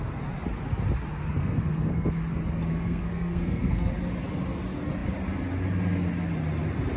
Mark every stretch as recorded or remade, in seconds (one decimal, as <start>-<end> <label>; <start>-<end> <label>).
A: 0.0-1.4 recorded; 1.4-2.1 remade; 2.1-2.7 recorded; 2.7-3.9 remade; 3.9-7.0 recorded